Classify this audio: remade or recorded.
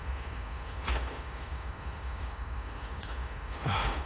remade